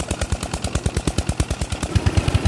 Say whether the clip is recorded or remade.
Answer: recorded